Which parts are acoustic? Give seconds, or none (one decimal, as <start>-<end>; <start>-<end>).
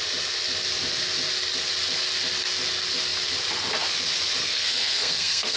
0.0-4.4